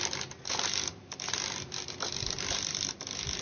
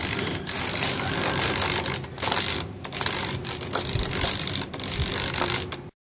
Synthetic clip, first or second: second